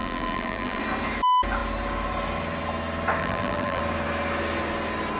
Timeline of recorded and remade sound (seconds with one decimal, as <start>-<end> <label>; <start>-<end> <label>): 0.0-0.8 remade; 0.8-3.2 recorded; 3.2-3.8 remade; 3.8-5.2 recorded